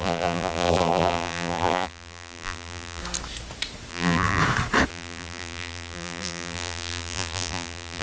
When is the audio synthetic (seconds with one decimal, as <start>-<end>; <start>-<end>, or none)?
0.0-3.0; 3.9-4.4; 4.9-8.0